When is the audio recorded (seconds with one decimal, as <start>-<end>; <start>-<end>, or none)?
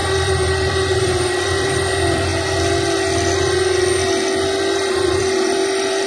2.3-4.9